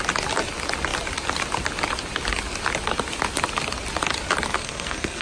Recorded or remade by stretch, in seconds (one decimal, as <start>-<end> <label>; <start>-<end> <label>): 0.0-4.6 recorded; 4.6-5.2 remade